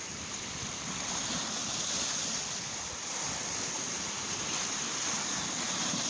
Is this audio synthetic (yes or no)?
yes